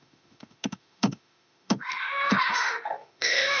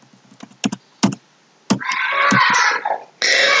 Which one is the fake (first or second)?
first